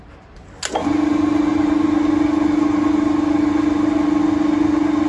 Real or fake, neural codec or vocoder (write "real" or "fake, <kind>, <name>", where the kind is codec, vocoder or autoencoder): real